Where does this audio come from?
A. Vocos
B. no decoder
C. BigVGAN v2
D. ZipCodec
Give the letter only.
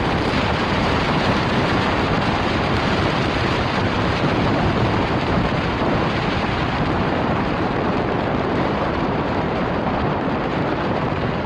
C